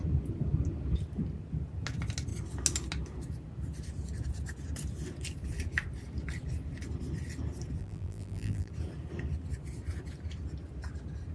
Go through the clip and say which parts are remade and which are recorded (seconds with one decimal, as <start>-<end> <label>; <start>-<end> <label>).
0.0-7.8 recorded; 7.8-8.7 remade; 8.7-11.3 recorded

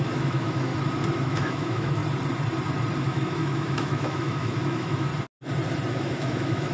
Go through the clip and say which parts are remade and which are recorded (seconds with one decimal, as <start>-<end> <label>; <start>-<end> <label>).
0.0-0.7 remade; 0.7-1.2 recorded; 1.2-2.0 remade; 2.0-3.0 recorded; 3.0-5.1 remade; 5.1-5.9 recorded; 5.9-6.7 remade

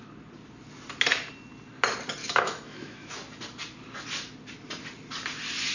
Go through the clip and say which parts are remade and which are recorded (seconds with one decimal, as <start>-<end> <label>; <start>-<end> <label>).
0.0-2.2 recorded; 2.2-3.1 remade; 3.1-5.7 recorded

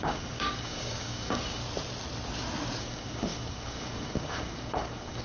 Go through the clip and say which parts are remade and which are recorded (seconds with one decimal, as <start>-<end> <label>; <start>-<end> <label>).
0.0-1.6 remade; 1.6-2.8 recorded; 2.8-5.2 remade

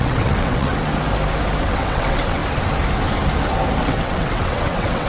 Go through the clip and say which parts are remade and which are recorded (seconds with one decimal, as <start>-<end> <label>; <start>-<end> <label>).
0.0-0.7 remade; 0.7-1.6 recorded; 1.6-2.4 remade; 2.4-3.8 recorded; 3.8-5.1 remade

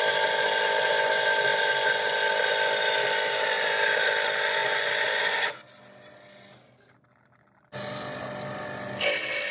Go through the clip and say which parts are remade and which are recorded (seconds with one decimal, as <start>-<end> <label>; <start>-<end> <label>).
0.0-9.5 recorded

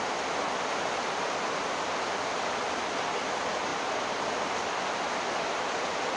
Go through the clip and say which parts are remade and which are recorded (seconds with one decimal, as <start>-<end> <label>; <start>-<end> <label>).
0.0-6.2 recorded